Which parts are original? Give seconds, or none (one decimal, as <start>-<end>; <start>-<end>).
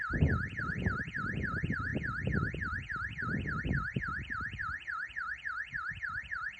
0.0-6.6